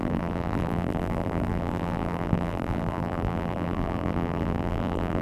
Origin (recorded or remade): remade